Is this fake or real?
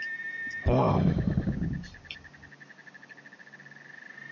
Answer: real